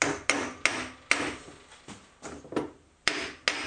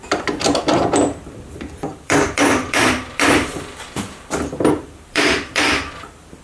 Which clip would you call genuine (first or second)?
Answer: first